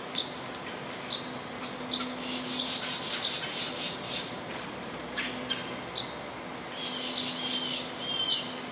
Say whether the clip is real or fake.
real